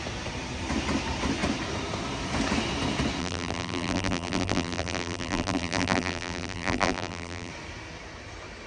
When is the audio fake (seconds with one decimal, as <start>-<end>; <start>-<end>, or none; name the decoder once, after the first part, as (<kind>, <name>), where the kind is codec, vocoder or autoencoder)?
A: 3.2-7.5 (vocoder, BigVGAN v2)